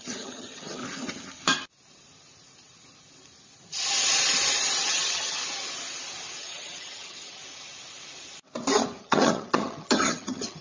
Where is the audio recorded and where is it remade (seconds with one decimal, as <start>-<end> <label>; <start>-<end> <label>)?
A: 0.0-0.8 remade; 0.8-4.9 recorded; 4.9-5.4 remade; 5.4-6.4 recorded; 6.4-7.4 remade; 7.4-9.0 recorded; 9.0-10.6 remade